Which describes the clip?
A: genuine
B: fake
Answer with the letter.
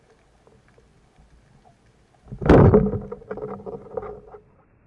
A